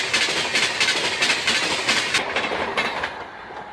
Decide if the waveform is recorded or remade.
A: recorded